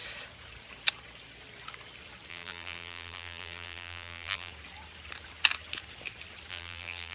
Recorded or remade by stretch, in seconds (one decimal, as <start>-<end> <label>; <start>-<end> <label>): 0.0-2.3 recorded; 2.3-4.5 remade; 4.5-6.5 recorded; 6.5-7.1 remade

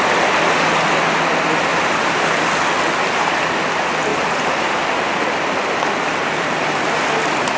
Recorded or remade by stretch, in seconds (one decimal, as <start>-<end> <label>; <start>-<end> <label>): 0.0-1.7 recorded; 1.7-2.4 remade; 2.4-4.1 recorded; 4.1-4.8 remade; 4.8-7.6 recorded

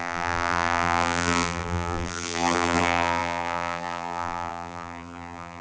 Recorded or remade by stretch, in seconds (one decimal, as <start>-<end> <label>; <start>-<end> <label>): 0.0-5.6 remade

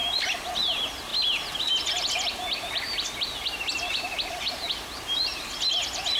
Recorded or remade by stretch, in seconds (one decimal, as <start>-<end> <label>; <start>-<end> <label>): 0.0-0.5 remade; 0.5-6.2 recorded

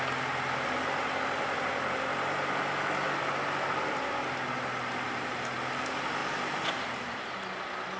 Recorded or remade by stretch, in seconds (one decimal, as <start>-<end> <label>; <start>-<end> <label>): 0.0-8.0 recorded

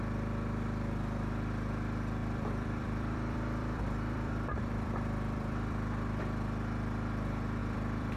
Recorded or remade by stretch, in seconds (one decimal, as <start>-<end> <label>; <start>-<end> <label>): 0.0-2.2 recorded; 2.2-6.2 remade; 6.2-7.6 recorded; 7.6-8.2 remade

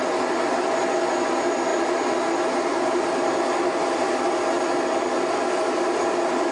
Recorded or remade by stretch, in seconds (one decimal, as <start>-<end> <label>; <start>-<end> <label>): 0.0-6.5 recorded

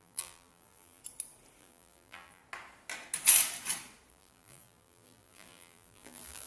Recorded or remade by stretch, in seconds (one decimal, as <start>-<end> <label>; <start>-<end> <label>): 0.0-1.0 remade; 1.0-1.6 recorded; 1.6-2.4 remade; 2.4-4.1 recorded; 4.1-6.5 remade